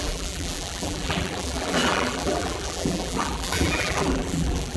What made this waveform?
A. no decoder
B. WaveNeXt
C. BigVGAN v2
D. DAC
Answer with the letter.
C